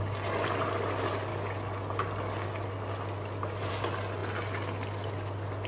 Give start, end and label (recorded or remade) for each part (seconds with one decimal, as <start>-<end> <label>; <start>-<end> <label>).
0.0-5.7 recorded